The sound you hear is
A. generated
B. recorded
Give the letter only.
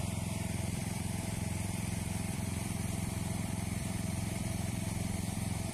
A